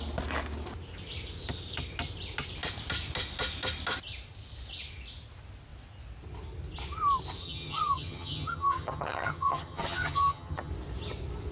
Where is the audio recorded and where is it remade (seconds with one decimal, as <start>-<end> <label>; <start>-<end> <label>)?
0.0-7.4 recorded; 7.4-10.7 remade; 10.7-11.5 recorded

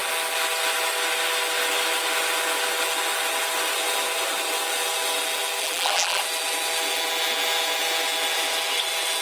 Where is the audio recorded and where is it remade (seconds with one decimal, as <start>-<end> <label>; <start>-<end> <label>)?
0.0-5.6 recorded; 5.6-6.2 remade; 6.2-9.2 recorded

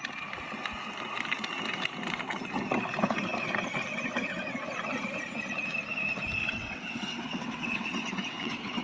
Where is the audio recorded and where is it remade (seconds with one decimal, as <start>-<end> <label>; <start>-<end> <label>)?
0.0-6.4 recorded; 6.4-8.8 remade

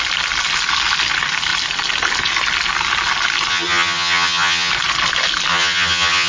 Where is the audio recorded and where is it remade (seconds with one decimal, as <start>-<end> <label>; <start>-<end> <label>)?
0.0-3.5 recorded; 3.5-4.7 remade; 4.7-5.5 recorded; 5.5-6.3 remade